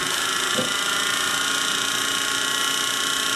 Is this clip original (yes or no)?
yes